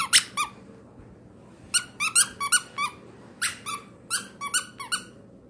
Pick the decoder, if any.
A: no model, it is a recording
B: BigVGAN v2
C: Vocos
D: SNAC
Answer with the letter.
A